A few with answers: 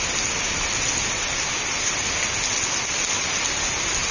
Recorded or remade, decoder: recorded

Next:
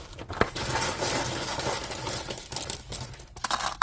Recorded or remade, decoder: recorded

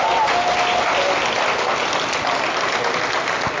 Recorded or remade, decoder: recorded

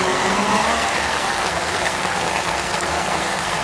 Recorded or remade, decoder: remade, codec, SNAC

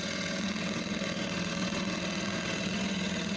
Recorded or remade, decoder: remade, vocoder, WaveNeXt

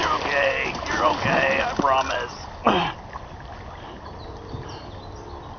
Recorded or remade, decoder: recorded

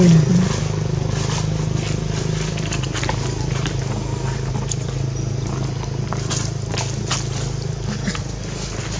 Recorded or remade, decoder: recorded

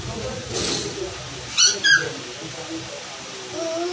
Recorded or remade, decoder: recorded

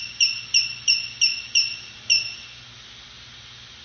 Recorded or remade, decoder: recorded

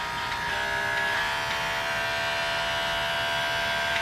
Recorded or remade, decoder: recorded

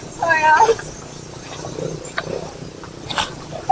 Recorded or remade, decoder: recorded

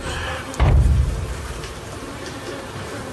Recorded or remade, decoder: remade, vocoder, BigVGAN v2